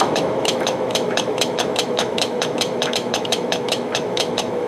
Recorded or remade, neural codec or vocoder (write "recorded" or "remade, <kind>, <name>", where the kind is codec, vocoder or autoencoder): remade, autoencoder, DAC-VAE